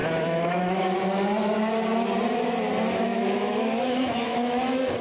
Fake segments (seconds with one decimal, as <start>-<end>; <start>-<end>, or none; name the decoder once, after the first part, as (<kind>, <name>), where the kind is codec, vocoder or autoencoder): 0.0-0.8 (autoencoder, DAC-VAE); 3.1-5.0